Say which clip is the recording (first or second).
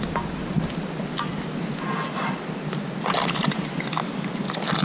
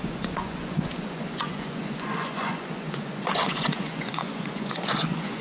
first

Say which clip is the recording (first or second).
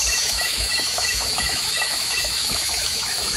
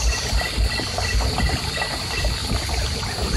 second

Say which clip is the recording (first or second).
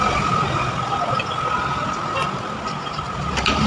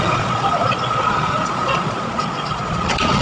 first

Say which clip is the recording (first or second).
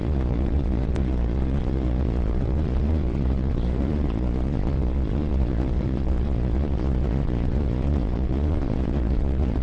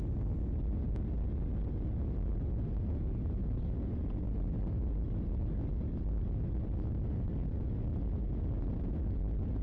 second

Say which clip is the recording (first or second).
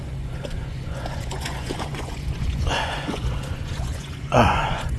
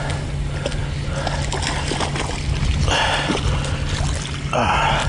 second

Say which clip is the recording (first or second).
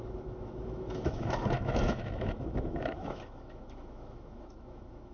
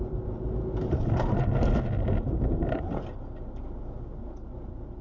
second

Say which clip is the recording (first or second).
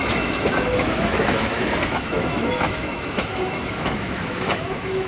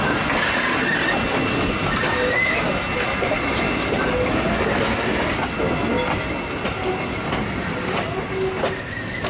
second